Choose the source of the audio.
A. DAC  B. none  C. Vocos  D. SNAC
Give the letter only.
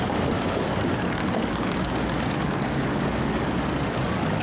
A